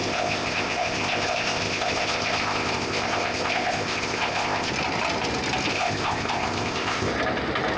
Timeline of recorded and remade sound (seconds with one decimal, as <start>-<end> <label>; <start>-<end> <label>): 0.0-4.7 remade; 4.7-5.7 recorded; 5.7-7.1 remade; 7.1-7.8 recorded